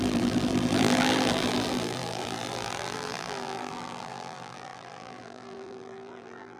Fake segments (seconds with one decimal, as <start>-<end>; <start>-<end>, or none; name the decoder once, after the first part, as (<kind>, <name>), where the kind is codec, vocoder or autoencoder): 0.0-6.6 (vocoder, BigVGAN v2)